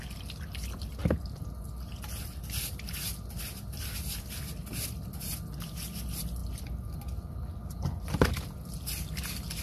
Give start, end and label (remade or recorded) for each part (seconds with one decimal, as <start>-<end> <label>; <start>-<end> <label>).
0.0-9.6 recorded